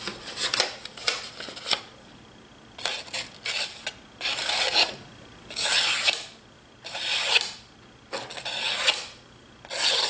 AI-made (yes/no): no